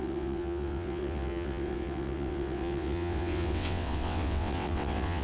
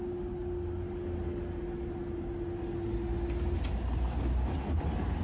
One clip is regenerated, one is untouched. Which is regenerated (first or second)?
first